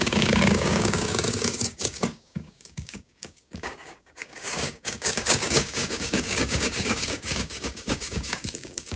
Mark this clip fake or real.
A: fake